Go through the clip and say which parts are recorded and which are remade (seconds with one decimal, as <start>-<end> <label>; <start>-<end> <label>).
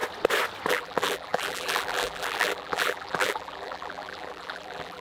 0.0-0.7 recorded; 0.7-5.0 remade